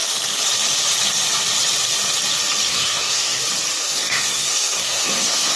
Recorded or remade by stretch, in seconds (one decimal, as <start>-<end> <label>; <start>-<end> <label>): 0.0-2.7 recorded; 2.7-3.4 remade; 3.4-3.8 recorded; 3.8-5.6 remade